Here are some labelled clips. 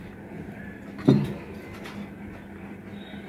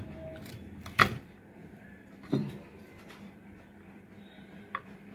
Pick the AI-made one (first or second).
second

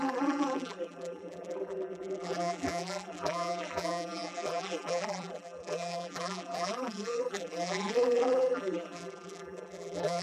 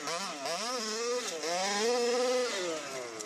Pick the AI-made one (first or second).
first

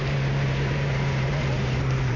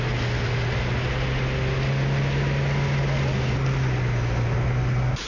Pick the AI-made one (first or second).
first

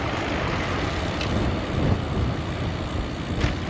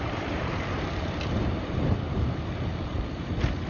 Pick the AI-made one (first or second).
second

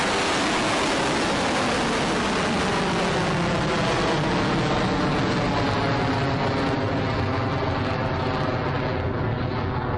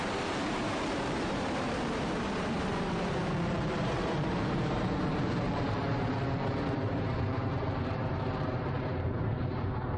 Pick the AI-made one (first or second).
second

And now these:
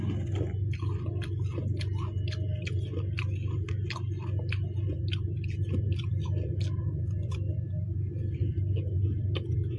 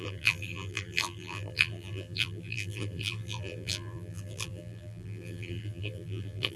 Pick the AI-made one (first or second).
second